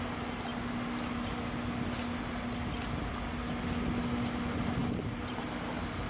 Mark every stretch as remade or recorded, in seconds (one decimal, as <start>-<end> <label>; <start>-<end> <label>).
0.0-4.8 recorded; 4.8-5.4 remade; 5.4-6.1 recorded

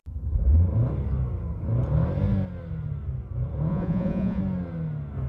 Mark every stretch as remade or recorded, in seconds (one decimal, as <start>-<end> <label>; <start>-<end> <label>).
0.0-3.7 recorded; 3.7-4.4 remade; 4.4-5.3 recorded

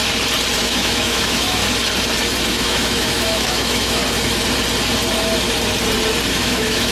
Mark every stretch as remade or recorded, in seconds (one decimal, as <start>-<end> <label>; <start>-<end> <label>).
0.0-0.6 recorded; 0.6-1.6 remade; 1.6-2.5 recorded; 2.5-4.0 remade; 4.0-6.3 recorded; 6.3-6.9 remade

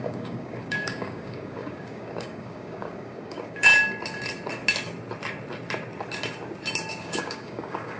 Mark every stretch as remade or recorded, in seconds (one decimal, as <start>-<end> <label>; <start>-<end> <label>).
0.0-3.7 remade; 3.7-6.9 recorded; 6.9-8.0 remade